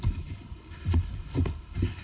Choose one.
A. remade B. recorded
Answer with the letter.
A